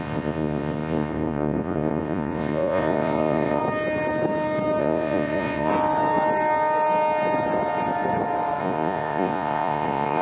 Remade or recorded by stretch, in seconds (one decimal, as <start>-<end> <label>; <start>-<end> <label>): 0.0-3.6 remade; 3.6-4.8 recorded; 4.8-5.7 remade; 5.7-8.6 recorded; 8.6-10.2 remade